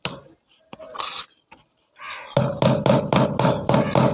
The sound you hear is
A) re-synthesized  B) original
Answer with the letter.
B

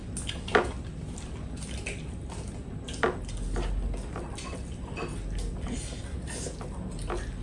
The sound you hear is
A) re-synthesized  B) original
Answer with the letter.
B